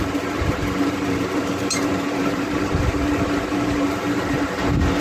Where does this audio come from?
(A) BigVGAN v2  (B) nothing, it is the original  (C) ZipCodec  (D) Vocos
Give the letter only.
A